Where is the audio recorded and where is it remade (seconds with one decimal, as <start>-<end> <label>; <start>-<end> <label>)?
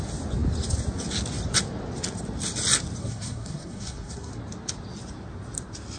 0.0-3.0 recorded; 3.0-4.3 remade; 4.3-6.0 recorded